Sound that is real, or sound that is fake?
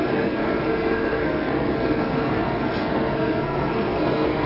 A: fake